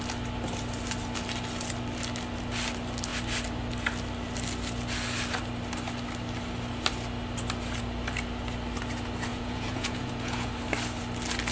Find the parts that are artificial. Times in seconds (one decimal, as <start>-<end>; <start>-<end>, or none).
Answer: 9.3-10.5